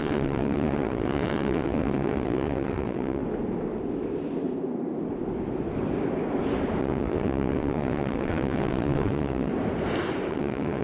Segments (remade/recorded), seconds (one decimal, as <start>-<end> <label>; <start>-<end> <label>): 0.0-3.2 remade; 3.2-6.8 recorded; 6.8-9.5 remade; 9.5-10.3 recorded; 10.3-10.8 remade